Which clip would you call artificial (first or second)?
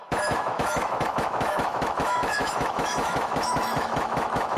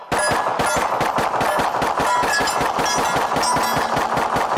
first